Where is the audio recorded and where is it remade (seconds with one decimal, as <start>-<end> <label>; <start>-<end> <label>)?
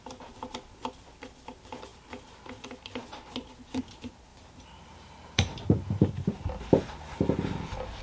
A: 0.0-4.3 recorded; 4.3-6.1 remade; 6.1-8.0 recorded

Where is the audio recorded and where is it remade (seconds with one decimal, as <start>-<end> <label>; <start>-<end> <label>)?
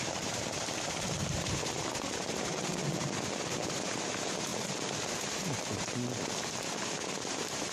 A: 0.0-2.8 remade; 2.8-3.4 recorded; 3.4-4.5 remade; 4.5-7.2 recorded; 7.2-7.7 remade